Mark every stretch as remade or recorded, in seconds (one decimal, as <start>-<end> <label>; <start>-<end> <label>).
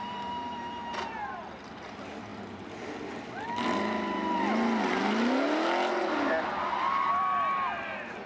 0.0-8.3 recorded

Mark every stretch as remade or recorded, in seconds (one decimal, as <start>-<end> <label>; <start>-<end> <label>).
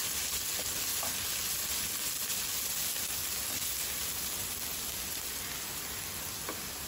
0.0-6.9 recorded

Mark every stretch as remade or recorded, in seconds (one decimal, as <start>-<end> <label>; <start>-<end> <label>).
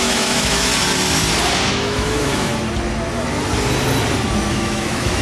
0.0-0.7 remade; 0.7-1.7 recorded; 1.7-2.5 remade; 2.5-4.5 recorded; 4.5-5.2 remade